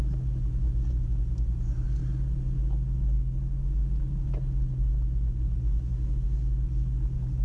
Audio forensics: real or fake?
real